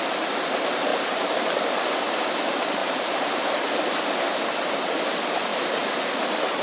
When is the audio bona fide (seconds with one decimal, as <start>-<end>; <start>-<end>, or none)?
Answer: 0.0-0.9; 1.6-2.8; 3.6-5.5